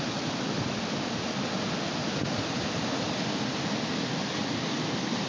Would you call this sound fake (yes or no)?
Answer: no